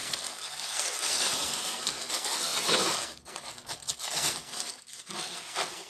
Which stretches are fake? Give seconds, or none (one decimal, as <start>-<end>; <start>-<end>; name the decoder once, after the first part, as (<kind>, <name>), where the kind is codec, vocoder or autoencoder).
0.0-5.9 (codec, SNAC)